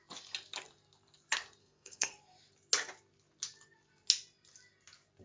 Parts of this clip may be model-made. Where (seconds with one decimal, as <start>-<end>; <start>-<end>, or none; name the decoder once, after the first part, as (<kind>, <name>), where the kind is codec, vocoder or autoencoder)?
1.6-2.2 (codec, SNAC)

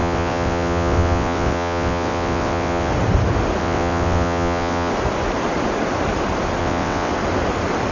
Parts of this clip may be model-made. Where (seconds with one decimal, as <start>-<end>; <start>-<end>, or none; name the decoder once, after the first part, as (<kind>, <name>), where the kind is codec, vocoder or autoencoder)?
0.0-2.9 (vocoder, WaveNeXt); 3.6-4.9; 6.6-7.1

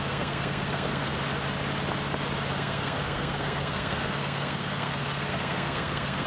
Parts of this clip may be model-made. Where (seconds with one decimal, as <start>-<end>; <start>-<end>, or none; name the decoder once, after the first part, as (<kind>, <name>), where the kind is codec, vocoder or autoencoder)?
0.0-1.1 (codec, SNAC); 2.5-6.3

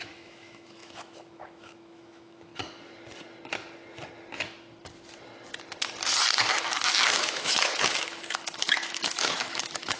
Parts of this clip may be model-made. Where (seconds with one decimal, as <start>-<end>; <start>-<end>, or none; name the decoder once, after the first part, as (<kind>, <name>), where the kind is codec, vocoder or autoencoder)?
0.0-2.5 (autoencoder, DAC-VAE); 6.9-10.0